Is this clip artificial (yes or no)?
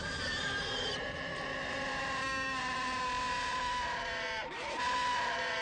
yes